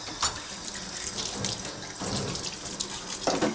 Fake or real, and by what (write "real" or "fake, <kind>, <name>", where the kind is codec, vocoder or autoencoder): real